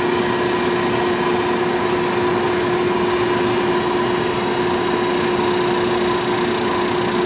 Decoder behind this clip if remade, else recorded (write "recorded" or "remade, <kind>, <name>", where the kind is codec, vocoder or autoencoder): recorded